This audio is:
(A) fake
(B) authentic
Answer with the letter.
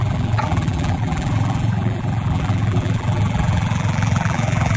A